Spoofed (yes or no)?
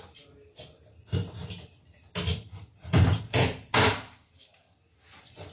no